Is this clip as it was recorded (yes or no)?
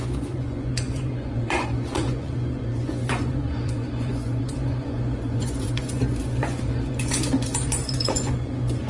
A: no